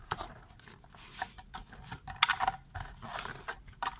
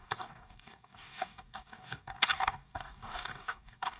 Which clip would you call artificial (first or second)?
second